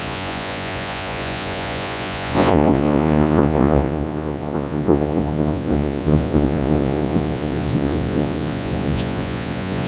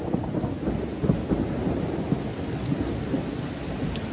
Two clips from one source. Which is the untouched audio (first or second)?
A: second